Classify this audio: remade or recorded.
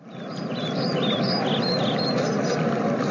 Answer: recorded